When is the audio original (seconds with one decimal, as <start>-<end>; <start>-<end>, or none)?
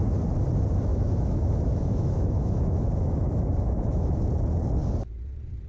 0.0-0.9; 4.2-5.7